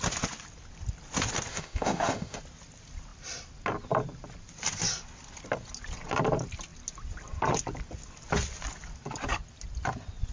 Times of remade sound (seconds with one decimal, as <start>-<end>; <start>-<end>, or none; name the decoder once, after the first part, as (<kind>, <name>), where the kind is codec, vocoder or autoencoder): 1.5-2.4 (autoencoder, DAC-VAE)